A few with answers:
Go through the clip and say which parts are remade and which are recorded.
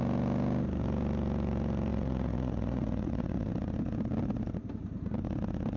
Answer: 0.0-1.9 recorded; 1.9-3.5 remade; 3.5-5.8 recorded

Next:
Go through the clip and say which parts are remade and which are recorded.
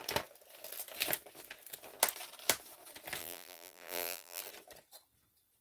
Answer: 0.0-3.2 recorded; 3.2-4.4 remade; 4.4-5.6 recorded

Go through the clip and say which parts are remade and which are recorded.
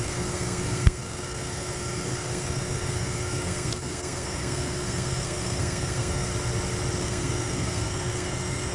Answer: 0.0-6.3 remade; 6.3-7.0 recorded; 7.0-8.7 remade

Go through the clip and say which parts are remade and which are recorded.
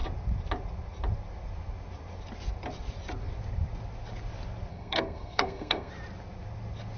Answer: 0.0-4.7 recorded; 4.7-5.9 remade; 5.9-7.0 recorded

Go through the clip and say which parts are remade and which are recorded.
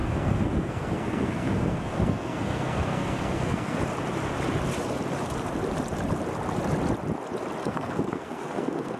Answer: 0.0-3.8 remade; 3.8-7.6 recorded; 7.6-9.0 remade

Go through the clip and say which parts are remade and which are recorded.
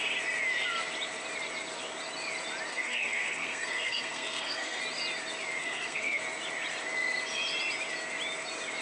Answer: 0.0-2.7 recorded; 2.7-4.8 remade; 4.8-5.6 recorded; 5.6-6.2 remade; 6.2-8.8 recorded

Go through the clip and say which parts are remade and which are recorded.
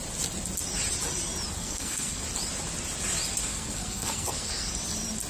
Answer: 0.0-1.6 recorded; 1.6-2.2 remade; 2.2-3.5 recorded; 3.5-4.7 remade; 4.7-5.3 recorded